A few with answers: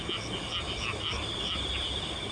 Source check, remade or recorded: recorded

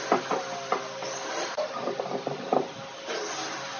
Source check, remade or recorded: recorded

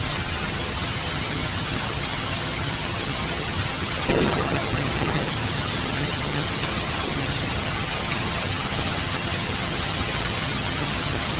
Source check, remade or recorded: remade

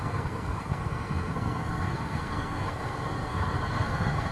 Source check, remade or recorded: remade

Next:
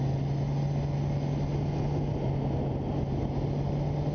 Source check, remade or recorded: recorded